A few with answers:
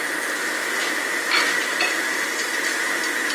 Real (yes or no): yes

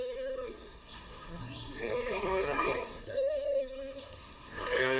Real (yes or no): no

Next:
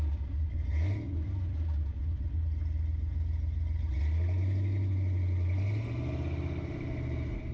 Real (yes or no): yes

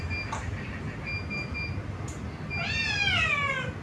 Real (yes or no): yes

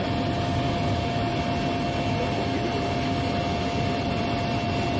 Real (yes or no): yes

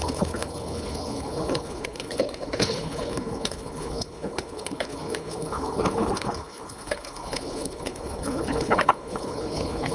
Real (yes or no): no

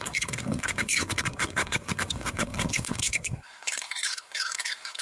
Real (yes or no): no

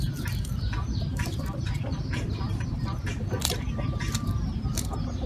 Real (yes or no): no